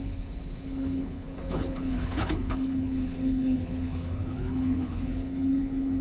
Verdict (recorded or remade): remade